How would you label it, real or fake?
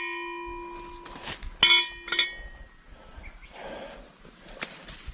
real